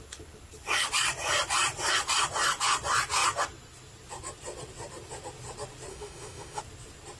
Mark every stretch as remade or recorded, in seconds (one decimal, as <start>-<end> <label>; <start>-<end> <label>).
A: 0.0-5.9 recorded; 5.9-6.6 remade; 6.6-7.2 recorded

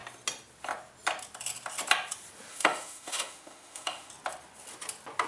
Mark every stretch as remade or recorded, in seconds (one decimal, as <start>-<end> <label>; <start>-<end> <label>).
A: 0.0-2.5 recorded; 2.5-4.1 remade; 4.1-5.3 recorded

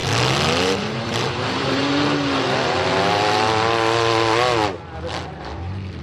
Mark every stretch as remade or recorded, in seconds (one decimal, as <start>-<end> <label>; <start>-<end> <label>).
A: 0.0-0.8 recorded; 0.8-1.8 remade; 1.8-5.4 recorded; 5.4-6.0 remade